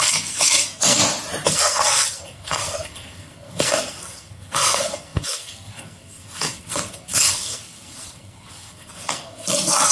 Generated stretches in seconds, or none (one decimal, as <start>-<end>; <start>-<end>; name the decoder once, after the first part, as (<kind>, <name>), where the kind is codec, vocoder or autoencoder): 0.0-1.0 (codec, SNAC); 1.5-9.9